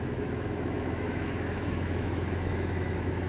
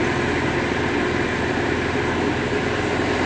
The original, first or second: second